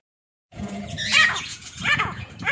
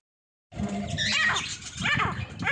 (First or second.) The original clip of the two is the second